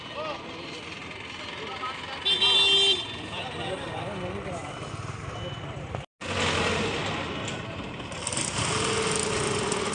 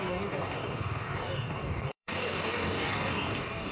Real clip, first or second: first